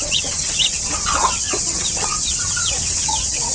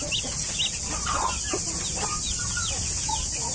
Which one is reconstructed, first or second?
first